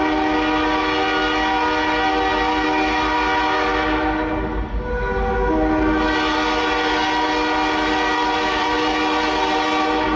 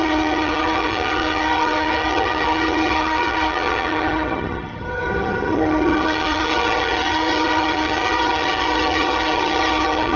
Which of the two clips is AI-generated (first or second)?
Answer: second